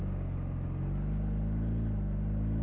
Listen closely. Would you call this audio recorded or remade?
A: recorded